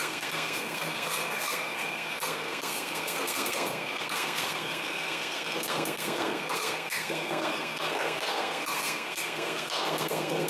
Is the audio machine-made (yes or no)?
yes